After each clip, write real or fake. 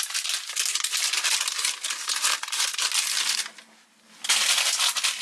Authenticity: real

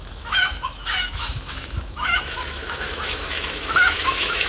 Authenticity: fake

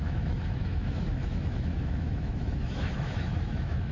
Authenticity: fake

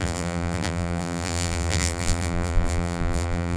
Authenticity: fake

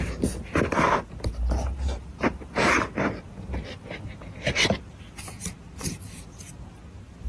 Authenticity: real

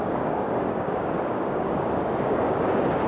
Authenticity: fake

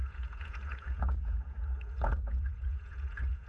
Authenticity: fake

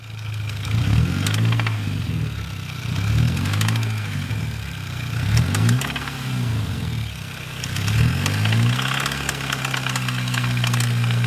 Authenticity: fake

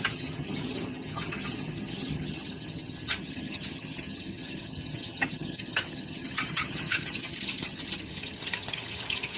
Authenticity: fake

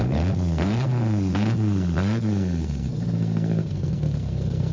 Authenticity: fake